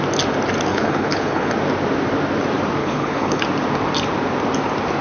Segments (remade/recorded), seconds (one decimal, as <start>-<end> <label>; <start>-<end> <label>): 0.0-0.7 recorded; 0.7-1.5 remade; 1.5-2.8 recorded; 2.8-3.4 remade; 3.4-5.0 recorded